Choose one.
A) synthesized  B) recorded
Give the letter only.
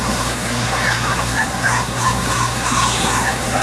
A